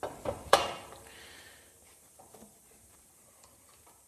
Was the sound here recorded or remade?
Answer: remade